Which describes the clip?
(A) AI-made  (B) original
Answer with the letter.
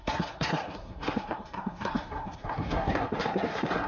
A